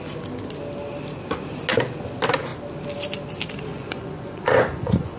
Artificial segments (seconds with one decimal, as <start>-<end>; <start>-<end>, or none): 3.7-5.2